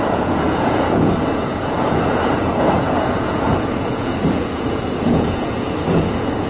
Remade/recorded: remade